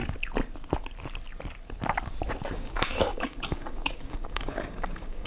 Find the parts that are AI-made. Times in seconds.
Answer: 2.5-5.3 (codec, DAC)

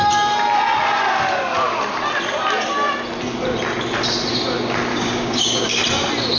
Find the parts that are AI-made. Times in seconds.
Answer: 4.9-5.8 (codec, DAC)